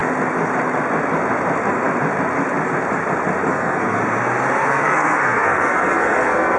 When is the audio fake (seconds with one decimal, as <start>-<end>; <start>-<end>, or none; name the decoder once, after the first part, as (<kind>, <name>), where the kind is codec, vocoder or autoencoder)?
3.5-4.0 (codec, SNAC); 4.6-6.6